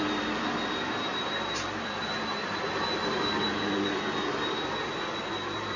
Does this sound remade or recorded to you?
remade